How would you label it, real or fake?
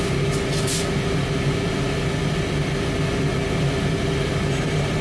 real